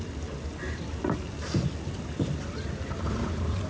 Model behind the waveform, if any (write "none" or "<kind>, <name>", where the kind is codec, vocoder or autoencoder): none